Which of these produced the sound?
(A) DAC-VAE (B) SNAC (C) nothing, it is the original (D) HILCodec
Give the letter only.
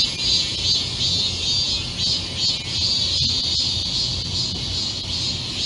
C